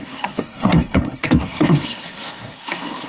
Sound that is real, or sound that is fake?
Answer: fake